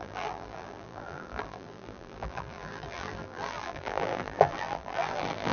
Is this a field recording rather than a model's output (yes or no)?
no